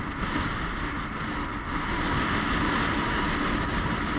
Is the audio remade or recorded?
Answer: recorded